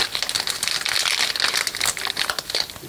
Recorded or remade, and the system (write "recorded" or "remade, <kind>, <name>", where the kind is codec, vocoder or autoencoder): recorded